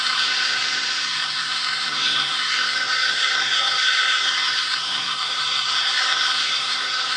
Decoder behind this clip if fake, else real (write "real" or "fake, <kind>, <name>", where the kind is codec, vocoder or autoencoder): fake, codec, SNAC